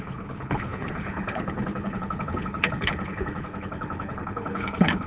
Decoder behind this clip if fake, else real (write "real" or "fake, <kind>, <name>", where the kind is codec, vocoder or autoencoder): fake, codec, HILCodec